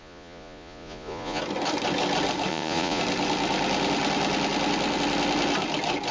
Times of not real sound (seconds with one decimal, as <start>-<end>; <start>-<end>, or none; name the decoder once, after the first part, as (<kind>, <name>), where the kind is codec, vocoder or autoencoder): 0.0-1.4 (vocoder, Vocos); 2.5-3.0